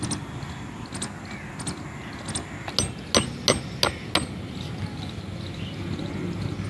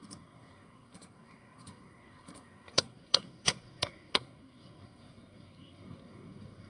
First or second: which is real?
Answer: first